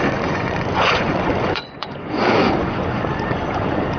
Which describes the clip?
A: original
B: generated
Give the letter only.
B